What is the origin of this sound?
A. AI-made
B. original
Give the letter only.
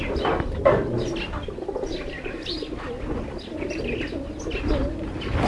B